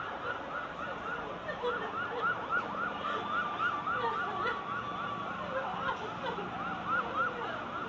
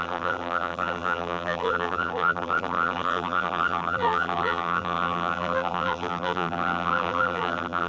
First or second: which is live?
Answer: first